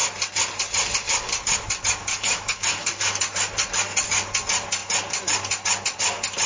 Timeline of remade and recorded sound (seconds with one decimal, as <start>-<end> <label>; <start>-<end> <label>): 0.0-2.1 recorded; 2.1-3.2 remade; 3.2-6.5 recorded